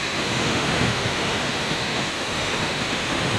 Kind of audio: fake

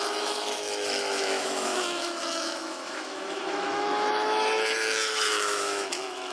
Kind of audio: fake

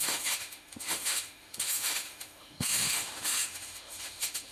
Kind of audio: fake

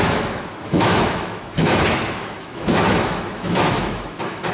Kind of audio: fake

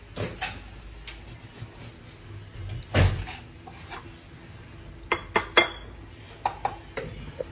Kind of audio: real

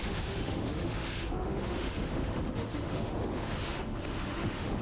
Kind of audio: fake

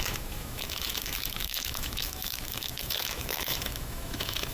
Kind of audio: fake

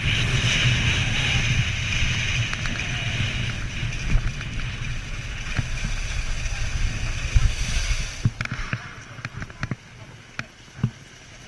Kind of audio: real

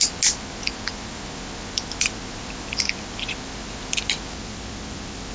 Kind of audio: real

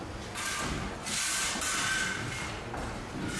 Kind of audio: real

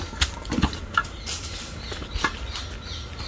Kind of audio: real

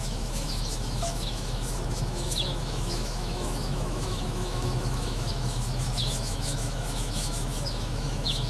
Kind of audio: fake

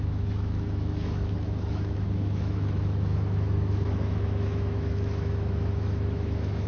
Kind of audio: fake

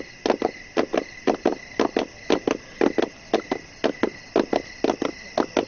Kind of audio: real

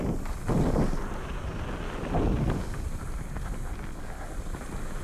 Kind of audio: real